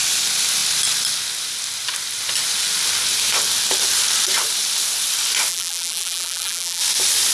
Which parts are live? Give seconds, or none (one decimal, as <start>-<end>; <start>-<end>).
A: 0.0-5.5; 6.8-7.3